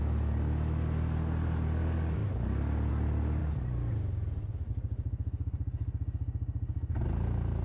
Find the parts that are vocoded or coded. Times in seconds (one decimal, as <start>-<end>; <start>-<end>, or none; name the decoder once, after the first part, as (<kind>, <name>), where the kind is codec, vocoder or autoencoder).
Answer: none